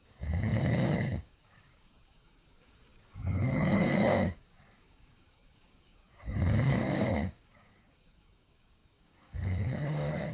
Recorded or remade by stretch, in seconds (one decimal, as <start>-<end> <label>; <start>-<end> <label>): 0.0-10.3 remade